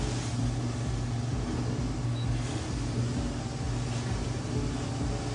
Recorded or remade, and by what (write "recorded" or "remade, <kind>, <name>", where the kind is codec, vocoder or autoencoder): recorded